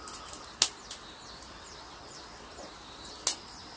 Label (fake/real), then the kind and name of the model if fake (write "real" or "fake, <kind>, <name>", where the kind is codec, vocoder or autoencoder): real